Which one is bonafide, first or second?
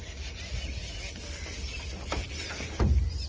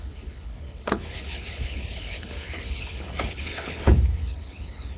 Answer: first